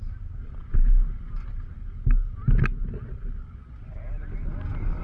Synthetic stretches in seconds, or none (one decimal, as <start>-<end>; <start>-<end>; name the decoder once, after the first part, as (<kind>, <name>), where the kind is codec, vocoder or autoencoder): none